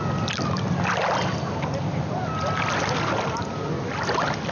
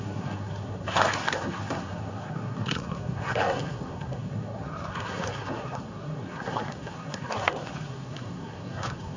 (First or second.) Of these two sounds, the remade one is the second